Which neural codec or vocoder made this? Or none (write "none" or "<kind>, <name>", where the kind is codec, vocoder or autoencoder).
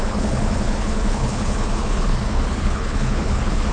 codec, HILCodec